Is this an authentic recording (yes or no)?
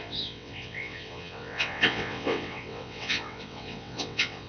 no